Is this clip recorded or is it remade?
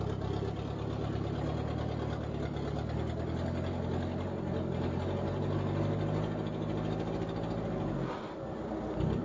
recorded